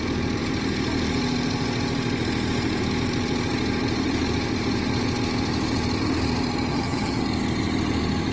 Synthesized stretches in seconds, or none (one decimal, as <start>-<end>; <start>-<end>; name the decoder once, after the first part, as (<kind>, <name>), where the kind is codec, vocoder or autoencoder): 6.7-7.2 (vocoder, HiFi-GAN)